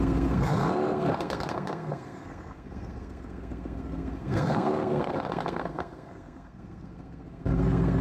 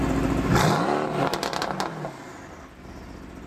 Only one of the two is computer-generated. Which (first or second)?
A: first